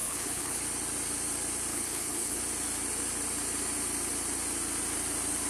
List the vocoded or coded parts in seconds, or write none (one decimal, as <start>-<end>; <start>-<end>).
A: 0.0-0.6; 1.7-2.4